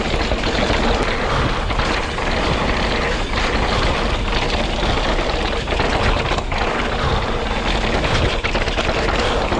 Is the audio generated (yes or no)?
no